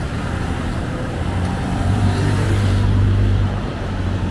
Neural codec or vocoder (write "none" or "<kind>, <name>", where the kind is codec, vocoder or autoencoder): vocoder, BigVGAN v2